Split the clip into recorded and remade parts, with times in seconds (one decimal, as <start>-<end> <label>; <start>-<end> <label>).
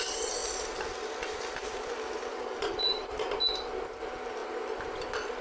0.0-2.3 recorded; 2.3-3.4 remade; 3.4-5.4 recorded